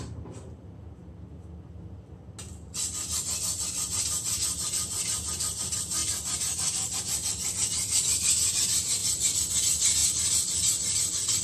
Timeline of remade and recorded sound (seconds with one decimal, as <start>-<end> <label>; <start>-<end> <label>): 0.0-6.0 recorded; 6.0-7.0 remade; 7.0-10.0 recorded; 10.0-11.4 remade